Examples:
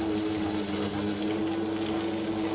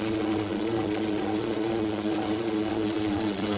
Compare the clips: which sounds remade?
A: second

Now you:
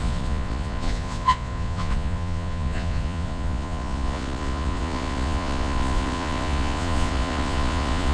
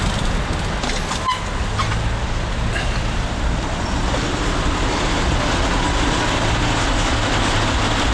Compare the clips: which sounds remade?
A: first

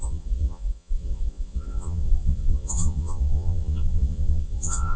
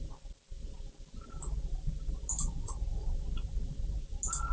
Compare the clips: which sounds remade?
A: first